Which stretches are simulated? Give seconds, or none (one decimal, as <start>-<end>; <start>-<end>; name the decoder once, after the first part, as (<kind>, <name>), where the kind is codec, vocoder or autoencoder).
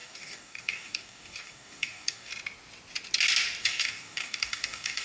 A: 0.0-2.3 (codec, DAC); 3.6-5.0